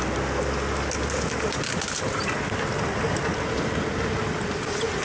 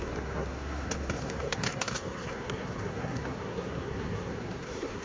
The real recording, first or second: first